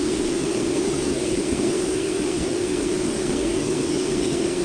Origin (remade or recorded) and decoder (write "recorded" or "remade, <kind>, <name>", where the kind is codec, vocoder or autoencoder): remade, codec, SNAC